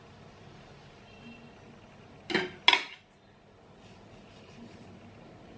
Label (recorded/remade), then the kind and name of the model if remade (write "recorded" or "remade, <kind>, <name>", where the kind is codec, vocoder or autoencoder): recorded